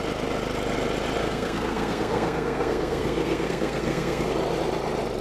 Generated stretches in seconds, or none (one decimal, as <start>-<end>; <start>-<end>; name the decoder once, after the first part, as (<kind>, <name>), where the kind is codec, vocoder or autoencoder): 1.2-4.3 (codec, SNAC)